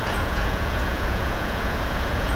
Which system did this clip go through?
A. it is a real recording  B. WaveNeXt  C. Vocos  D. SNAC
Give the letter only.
C